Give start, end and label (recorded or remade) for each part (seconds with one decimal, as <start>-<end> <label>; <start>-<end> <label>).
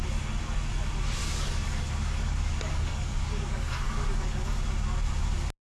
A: 0.0-1.2 recorded; 1.2-4.6 remade; 4.6-5.7 recorded